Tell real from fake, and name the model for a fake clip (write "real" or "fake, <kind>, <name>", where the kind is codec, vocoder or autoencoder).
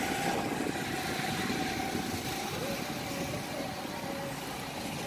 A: real